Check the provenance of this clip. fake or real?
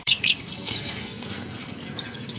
fake